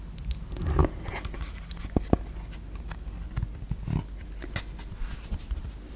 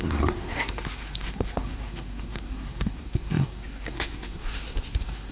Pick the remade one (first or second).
second